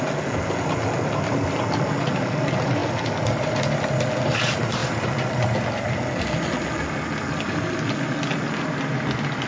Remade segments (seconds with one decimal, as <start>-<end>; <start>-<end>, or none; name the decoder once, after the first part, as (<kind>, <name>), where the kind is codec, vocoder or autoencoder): none